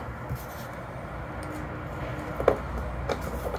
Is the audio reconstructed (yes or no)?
no